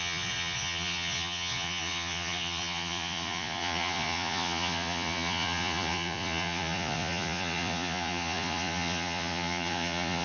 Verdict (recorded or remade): remade